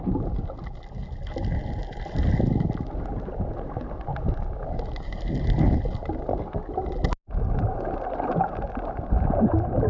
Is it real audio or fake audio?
real